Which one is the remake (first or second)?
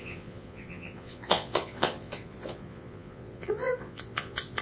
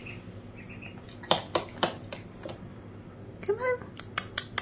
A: first